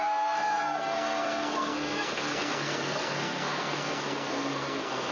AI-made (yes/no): yes